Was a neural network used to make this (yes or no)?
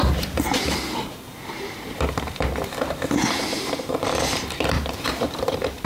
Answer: yes